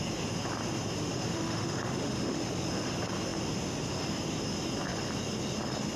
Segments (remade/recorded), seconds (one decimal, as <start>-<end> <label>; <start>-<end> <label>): 0.0-1.0 recorded; 1.0-2.4 remade; 2.4-6.0 recorded